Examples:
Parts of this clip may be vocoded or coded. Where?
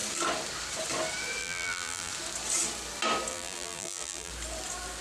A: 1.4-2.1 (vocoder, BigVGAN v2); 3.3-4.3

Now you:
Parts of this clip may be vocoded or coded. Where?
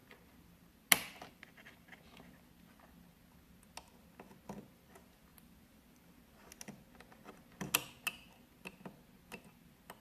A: none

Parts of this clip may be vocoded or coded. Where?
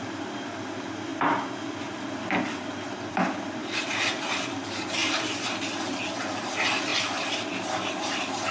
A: 0.0-1.1 (vocoder, BigVGAN v2); 1.6-5.0; 6.4-8.5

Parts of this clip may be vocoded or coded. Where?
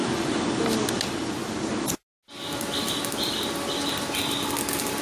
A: none